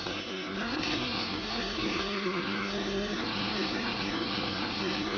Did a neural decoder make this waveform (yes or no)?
yes